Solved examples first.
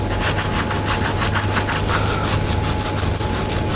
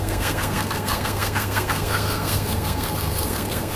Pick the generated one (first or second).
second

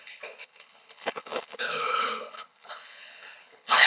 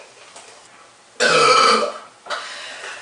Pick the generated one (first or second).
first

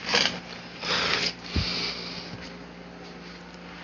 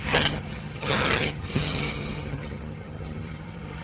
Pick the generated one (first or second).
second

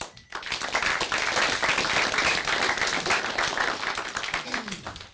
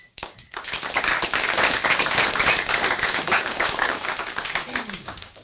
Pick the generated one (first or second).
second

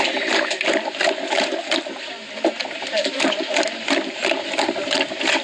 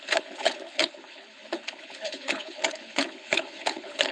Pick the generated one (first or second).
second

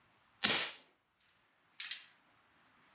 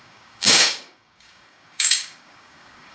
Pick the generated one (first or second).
second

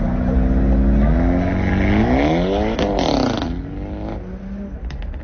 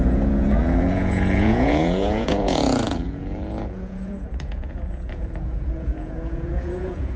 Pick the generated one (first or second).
second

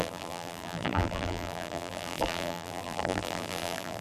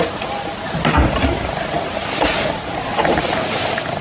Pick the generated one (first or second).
first